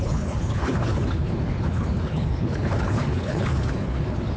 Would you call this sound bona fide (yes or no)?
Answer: no